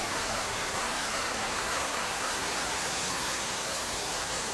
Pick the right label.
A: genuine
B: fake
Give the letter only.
B